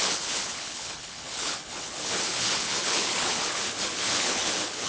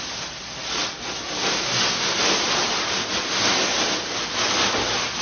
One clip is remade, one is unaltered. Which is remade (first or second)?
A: first